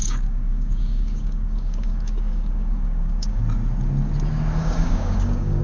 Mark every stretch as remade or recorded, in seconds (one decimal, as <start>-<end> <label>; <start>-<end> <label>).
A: 0.0-3.4 remade; 3.4-4.6 recorded; 4.6-5.6 remade